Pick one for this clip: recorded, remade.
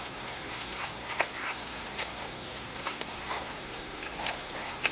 remade